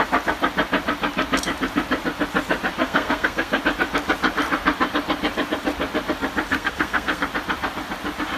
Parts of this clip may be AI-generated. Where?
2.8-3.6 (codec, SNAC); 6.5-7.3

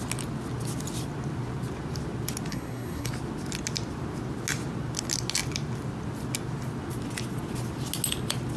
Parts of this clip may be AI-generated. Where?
2.5-3.1 (codec, SNAC)